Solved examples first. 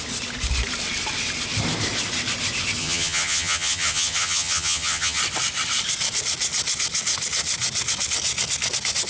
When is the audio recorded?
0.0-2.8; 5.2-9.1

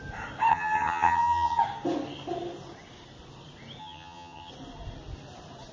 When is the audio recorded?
0.0-0.5; 1.6-3.8; 4.5-5.7